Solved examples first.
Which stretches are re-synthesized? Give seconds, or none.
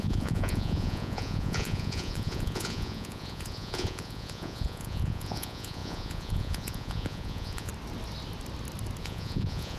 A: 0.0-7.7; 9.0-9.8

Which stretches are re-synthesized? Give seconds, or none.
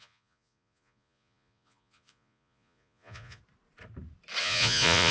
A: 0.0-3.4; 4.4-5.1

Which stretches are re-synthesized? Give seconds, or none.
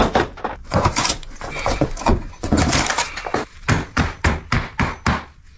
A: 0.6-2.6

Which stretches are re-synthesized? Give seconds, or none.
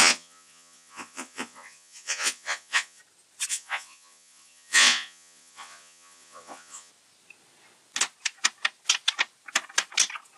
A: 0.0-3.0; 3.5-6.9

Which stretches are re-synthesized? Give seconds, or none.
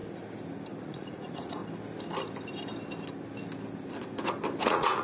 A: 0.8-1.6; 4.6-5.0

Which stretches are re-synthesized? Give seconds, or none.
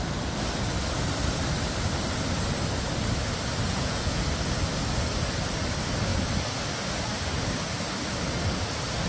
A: 3.7-4.2